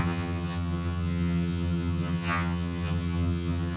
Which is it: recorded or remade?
remade